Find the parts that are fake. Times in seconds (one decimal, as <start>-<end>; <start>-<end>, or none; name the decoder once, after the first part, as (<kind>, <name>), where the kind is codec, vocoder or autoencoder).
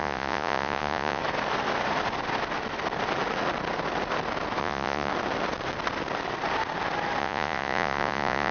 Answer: 0.0-1.2 (vocoder, Vocos); 4.6-5.1; 7.2-8.5